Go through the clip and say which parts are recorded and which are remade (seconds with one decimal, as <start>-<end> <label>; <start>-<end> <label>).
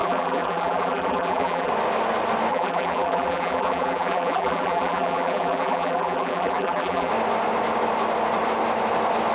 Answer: 0.0-1.7 remade; 1.7-2.5 recorded; 2.5-7.1 remade; 7.1-9.3 recorded